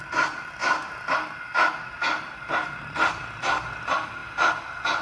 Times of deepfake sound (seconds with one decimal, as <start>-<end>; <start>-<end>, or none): none